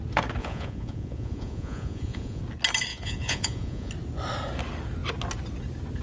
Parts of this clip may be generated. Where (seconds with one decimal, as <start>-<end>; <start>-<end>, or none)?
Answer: 0.4-2.4; 2.9-3.9